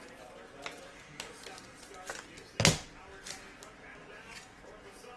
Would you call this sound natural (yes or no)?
yes